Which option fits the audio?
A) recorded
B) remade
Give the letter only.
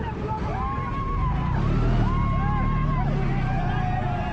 A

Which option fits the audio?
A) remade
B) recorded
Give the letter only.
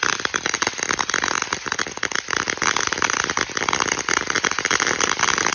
B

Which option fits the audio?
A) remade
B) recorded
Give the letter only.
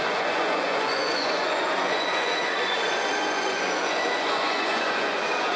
A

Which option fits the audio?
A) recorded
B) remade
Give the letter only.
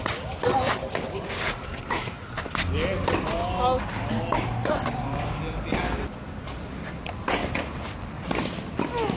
A